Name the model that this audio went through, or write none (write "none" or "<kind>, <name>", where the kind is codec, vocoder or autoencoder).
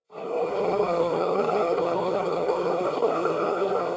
codec, SNAC